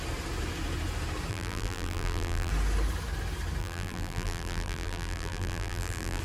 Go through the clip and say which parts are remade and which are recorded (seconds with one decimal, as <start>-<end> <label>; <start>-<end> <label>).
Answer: 0.0-1.3 recorded; 1.3-2.5 remade; 2.5-3.6 recorded; 3.6-6.2 remade